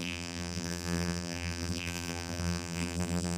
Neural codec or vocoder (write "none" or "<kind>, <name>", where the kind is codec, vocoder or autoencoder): vocoder, BigVGAN v2